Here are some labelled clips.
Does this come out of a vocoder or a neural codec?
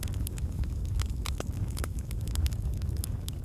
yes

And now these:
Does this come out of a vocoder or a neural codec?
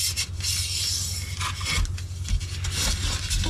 no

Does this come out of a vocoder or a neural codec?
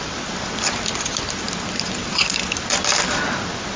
yes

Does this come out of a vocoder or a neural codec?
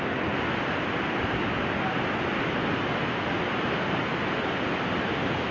no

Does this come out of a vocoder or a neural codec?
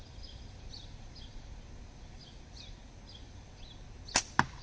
no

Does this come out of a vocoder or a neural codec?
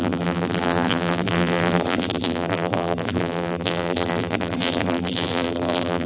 yes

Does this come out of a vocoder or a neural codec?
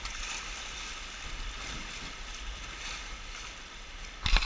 no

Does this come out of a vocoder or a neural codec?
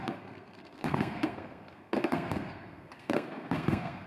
yes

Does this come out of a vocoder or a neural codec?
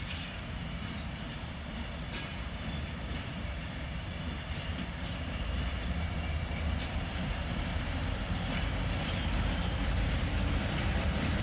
yes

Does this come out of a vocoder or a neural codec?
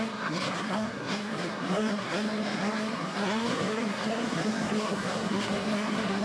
yes